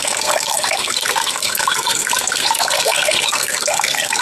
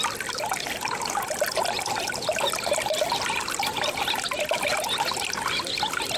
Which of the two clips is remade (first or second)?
first